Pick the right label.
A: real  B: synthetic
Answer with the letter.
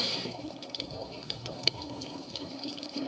B